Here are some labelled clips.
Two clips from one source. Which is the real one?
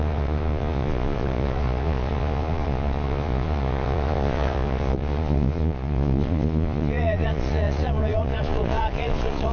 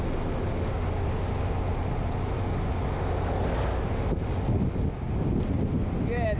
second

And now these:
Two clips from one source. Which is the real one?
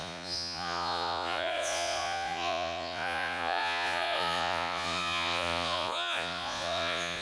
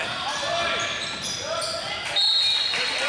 second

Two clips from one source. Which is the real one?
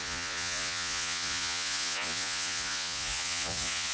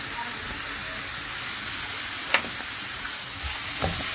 second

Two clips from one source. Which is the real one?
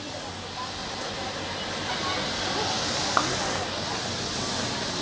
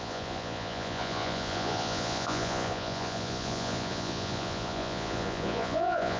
first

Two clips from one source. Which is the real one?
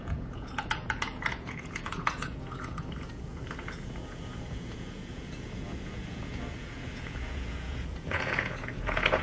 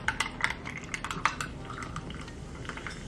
second